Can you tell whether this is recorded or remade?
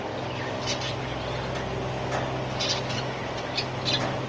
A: recorded